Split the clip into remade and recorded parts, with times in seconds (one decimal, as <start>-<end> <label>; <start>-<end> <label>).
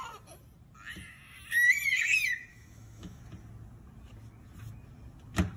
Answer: 0.0-2.5 recorded; 2.5-3.2 remade; 3.2-5.6 recorded